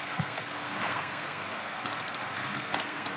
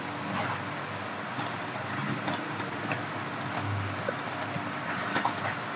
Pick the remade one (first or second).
first